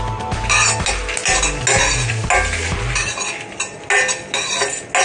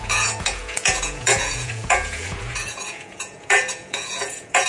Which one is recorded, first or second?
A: first